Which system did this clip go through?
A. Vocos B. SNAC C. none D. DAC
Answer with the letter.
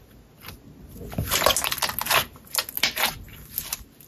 C